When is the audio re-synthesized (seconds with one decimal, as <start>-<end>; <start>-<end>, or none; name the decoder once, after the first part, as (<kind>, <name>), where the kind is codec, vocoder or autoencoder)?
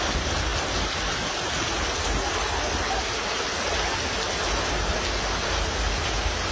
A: none